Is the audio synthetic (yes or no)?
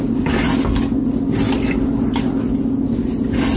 no